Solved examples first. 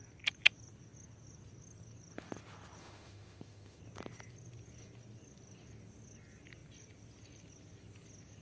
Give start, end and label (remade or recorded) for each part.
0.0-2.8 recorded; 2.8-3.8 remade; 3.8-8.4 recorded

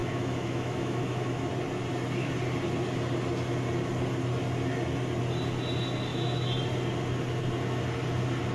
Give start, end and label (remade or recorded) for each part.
0.0-1.5 remade; 1.5-6.1 recorded; 6.1-6.6 remade; 6.6-8.5 recorded

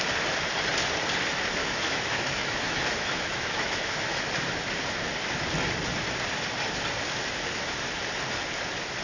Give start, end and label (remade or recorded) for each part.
0.0-1.6 recorded; 1.6-4.3 remade; 4.3-9.0 recorded

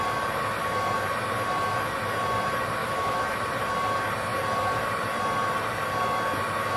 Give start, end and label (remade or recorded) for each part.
0.0-2.8 recorded; 2.8-3.4 remade; 3.4-6.8 recorded

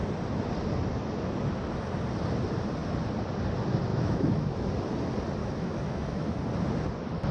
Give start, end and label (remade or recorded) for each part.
0.0-3.9 recorded; 3.9-4.7 remade; 4.7-5.4 recorded; 5.4-6.4 remade; 6.4-7.3 recorded

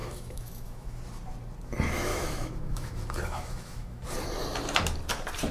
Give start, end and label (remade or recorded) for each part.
0.0-1.0 remade; 1.0-2.1 recorded; 2.1-4.0 remade; 4.0-5.5 recorded

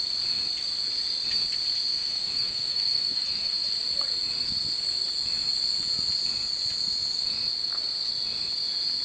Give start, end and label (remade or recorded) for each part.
0.0-1.9 recorded; 1.9-3.7 remade; 3.7-9.0 recorded